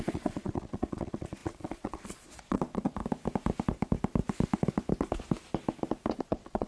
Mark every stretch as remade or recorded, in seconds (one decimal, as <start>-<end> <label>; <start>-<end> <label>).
0.0-3.0 remade; 3.0-6.2 recorded; 6.2-6.7 remade